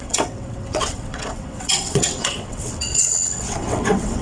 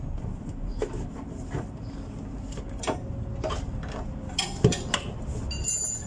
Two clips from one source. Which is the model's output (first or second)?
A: first